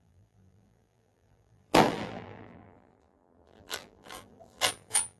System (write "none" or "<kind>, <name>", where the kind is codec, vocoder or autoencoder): vocoder, BigVGAN v2